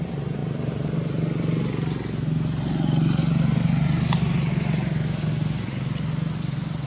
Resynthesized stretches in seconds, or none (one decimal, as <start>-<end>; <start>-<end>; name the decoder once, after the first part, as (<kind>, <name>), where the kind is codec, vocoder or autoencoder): none